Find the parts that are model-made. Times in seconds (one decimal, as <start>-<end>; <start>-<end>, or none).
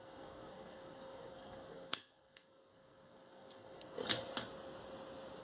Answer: 0.0-4.0